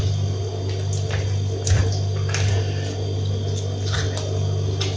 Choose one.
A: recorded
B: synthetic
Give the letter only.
A